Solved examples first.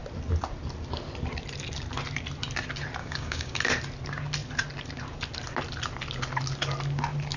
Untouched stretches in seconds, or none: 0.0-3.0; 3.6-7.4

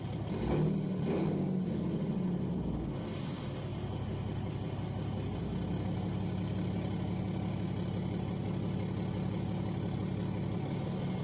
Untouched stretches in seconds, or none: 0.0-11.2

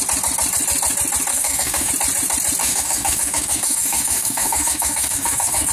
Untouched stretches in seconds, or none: 0.0-1.3; 1.9-2.6

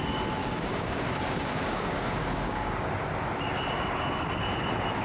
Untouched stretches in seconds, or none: 0.0-0.4; 2.7-5.0

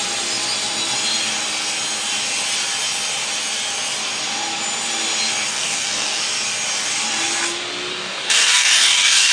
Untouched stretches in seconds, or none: 0.0-5.5; 6.2-7.9

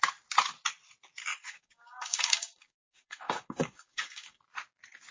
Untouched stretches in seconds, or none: 0.0-1.3; 4.4-5.1

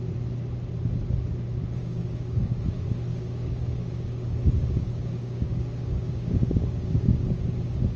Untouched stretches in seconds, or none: 0.0-1.8; 2.6-3.1